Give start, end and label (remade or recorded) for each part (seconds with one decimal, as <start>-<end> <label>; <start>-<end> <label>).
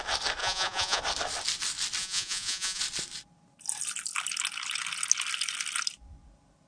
0.0-0.4 recorded; 0.4-1.0 remade; 1.0-2.0 recorded; 2.0-2.8 remade; 2.8-6.7 recorded